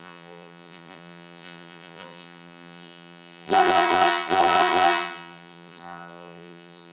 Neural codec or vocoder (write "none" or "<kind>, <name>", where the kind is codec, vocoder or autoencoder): vocoder, BigVGAN v2